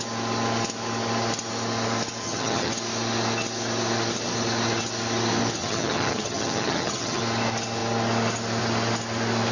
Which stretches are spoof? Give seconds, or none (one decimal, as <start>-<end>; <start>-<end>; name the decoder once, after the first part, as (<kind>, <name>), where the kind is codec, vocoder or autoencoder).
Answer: 2.2-2.7 (vocoder, HiFi-GAN); 5.6-7.2